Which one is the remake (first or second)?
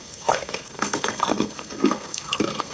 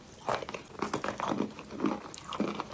first